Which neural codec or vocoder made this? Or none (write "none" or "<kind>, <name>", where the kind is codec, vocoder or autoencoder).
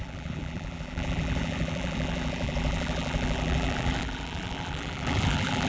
vocoder, BigVGAN v2